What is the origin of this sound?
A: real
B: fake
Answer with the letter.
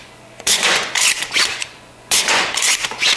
B